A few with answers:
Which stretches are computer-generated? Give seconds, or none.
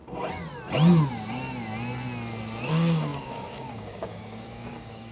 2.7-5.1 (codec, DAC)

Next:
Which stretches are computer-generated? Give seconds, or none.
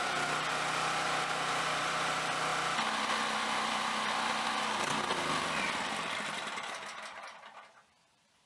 0.0-2.5 (vocoder, BigVGAN v2); 3.7-8.5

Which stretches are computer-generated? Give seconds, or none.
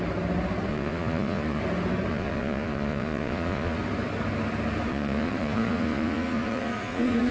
0.7-1.6 (vocoder, Vocos); 2.1-3.8; 4.9-7.3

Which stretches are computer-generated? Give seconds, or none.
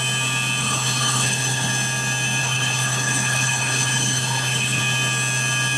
0.6-1.7 (codec, HILCodec); 2.4-4.8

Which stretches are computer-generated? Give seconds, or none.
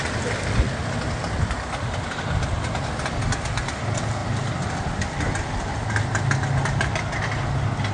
none